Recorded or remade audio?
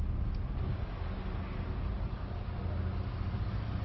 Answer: recorded